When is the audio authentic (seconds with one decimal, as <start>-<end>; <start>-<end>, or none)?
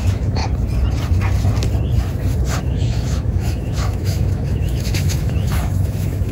0.4-2.6